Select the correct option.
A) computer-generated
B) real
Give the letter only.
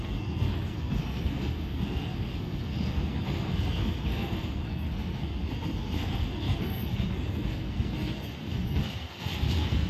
A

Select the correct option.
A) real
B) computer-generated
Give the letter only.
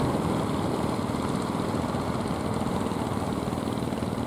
A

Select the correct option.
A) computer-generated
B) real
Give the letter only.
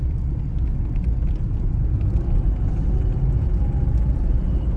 B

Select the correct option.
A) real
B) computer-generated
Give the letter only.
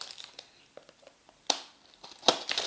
B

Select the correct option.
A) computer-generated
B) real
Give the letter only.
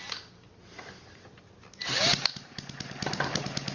B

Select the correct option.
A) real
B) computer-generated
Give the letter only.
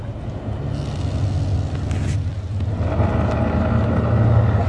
A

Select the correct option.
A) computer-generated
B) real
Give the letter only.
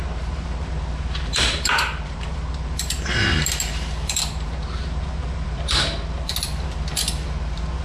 A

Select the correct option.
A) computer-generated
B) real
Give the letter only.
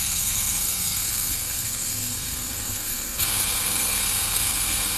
A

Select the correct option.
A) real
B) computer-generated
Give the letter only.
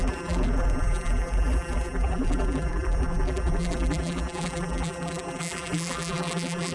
B